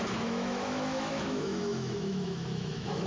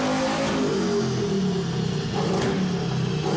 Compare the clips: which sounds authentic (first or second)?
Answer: second